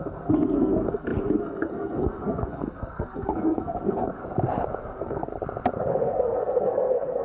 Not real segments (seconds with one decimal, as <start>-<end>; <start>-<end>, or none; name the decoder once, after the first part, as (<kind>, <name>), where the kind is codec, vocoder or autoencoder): 0.0-4.2 (codec, SNAC); 4.8-5.3; 5.9-7.2